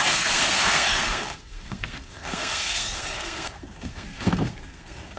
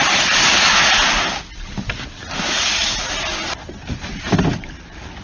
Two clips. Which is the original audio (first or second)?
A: second